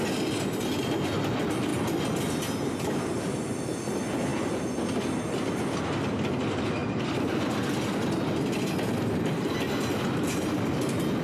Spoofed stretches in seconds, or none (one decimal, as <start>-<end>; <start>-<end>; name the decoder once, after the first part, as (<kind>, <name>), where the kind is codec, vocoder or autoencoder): none